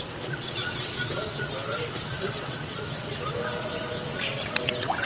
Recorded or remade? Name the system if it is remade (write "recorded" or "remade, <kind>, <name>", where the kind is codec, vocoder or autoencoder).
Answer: remade, vocoder, WaveNeXt